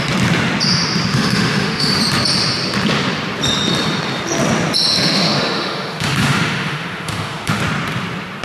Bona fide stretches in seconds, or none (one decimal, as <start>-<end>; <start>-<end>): 0.0-1.1; 2.0-4.9; 7.6-8.4